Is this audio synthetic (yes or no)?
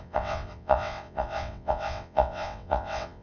yes